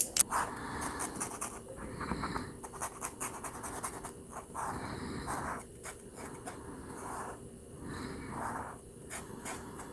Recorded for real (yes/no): yes